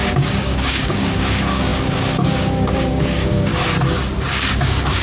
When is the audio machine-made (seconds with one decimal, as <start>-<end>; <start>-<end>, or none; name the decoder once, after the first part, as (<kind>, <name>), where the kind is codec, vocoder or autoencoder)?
0.0-3.5 (codec, DAC); 4.3-5.0